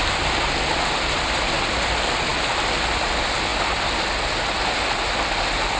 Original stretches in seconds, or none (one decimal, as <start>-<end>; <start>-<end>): 0.0-5.8